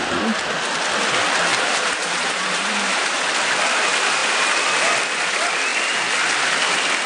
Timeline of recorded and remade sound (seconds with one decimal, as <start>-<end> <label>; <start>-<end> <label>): 0.0-1.5 recorded; 1.5-3.2 remade; 3.2-7.1 recorded